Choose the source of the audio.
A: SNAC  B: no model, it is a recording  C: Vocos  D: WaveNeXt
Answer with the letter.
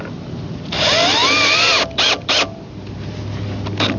B